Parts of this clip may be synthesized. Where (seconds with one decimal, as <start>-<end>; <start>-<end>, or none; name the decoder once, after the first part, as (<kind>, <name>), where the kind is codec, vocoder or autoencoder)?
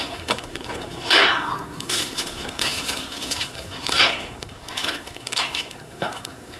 0.0-6.6 (codec, SNAC)